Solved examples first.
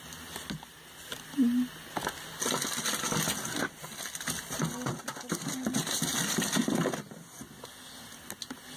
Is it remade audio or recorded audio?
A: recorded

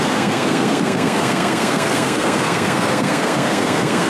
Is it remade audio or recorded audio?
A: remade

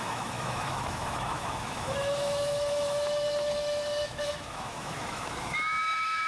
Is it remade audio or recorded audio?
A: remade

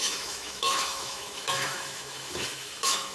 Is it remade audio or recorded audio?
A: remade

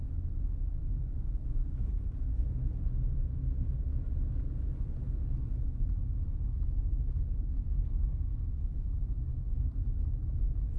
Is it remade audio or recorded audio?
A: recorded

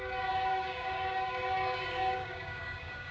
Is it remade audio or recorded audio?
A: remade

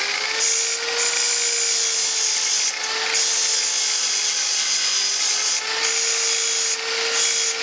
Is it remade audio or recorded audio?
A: recorded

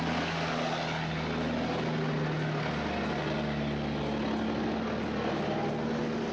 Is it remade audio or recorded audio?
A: recorded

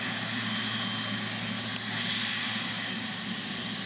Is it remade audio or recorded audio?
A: recorded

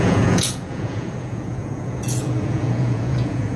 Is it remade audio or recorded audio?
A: remade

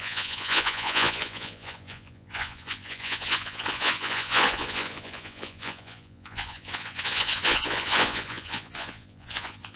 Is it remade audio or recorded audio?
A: remade